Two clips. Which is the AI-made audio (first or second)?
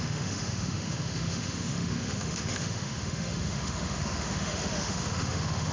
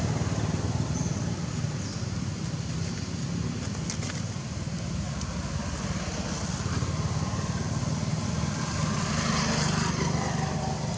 first